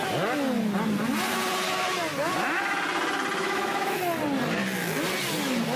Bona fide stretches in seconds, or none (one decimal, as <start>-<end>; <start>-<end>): 0.0-3.4; 4.0-5.8